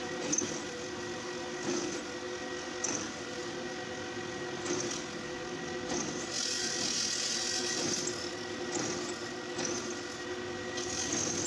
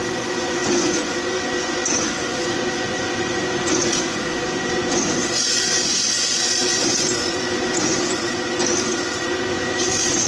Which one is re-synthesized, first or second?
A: second